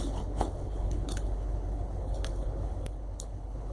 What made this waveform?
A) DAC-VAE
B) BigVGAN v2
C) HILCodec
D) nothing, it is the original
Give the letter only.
C